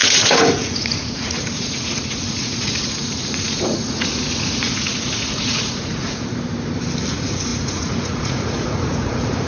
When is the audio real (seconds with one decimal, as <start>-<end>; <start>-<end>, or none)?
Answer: 6.3-7.1